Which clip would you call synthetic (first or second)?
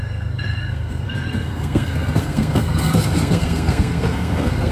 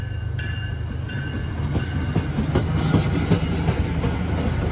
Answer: first